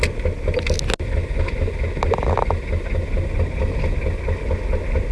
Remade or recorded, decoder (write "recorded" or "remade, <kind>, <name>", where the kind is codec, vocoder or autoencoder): recorded